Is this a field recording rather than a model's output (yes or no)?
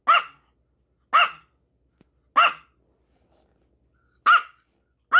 yes